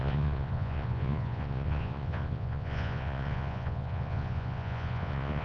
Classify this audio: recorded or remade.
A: remade